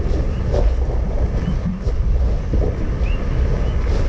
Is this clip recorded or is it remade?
recorded